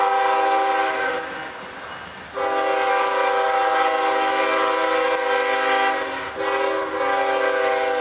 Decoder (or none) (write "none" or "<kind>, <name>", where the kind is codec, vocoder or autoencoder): none